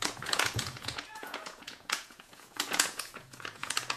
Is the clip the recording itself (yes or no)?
no